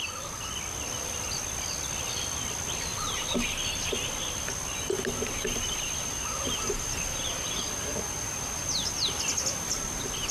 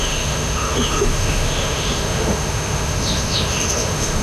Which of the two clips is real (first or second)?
first